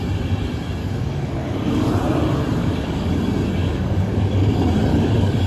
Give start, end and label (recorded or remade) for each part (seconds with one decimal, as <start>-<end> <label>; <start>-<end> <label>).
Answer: 0.0-0.8 recorded; 0.8-1.9 remade; 1.9-2.6 recorded; 2.6-3.1 remade; 3.1-3.6 recorded; 3.6-4.5 remade; 4.5-4.9 recorded; 4.9-5.5 remade